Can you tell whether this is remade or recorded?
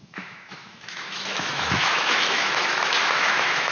remade